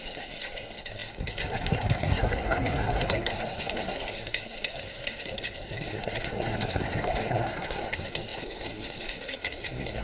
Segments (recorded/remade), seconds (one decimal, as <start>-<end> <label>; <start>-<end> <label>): 0.0-10.0 remade